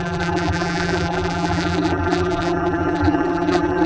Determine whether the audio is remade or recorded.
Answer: remade